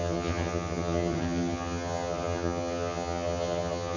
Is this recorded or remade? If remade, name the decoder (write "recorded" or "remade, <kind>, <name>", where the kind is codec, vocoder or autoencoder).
remade, vocoder, HiFi-GAN